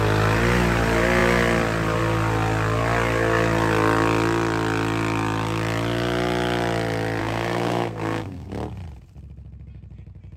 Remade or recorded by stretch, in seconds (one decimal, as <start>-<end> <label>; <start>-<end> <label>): 0.0-7.2 recorded; 7.2-8.5 remade; 8.5-10.4 recorded